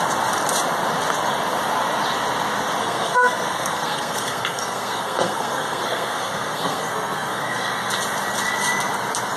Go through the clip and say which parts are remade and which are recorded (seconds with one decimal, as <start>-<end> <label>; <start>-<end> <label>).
0.0-2.8 recorded; 2.8-7.9 remade; 7.9-9.4 recorded